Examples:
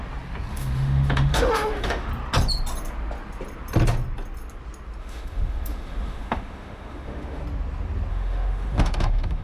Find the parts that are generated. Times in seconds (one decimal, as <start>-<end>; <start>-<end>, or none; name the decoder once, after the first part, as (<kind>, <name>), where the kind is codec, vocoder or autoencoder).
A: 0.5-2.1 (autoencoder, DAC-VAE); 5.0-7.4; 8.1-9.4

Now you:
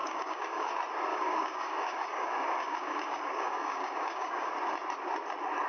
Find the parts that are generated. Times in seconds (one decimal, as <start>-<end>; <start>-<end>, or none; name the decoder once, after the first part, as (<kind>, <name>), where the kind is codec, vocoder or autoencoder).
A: 0.0-0.7 (codec, DAC); 1.1-4.5

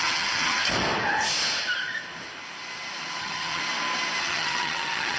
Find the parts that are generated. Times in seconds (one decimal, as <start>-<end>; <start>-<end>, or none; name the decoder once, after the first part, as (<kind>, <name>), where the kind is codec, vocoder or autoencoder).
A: 0.0-0.6 (vocoder, HiFi-GAN); 3.2-3.6; 4.2-5.2

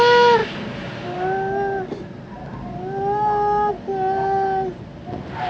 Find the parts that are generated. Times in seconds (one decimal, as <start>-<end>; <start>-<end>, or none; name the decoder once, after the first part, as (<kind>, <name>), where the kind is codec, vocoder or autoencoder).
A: none

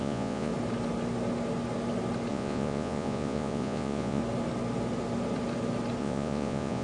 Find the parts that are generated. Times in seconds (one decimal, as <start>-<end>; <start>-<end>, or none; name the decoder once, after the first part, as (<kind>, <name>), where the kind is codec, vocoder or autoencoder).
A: 0.0-0.5 (vocoder, Vocos); 2.3-4.2; 6.0-6.8

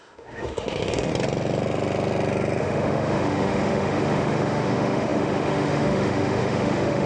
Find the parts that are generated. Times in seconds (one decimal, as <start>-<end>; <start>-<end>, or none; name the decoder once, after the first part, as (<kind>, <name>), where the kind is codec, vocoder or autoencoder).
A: 0.0-1.1 (autoencoder, DAC-VAE); 2.6-7.1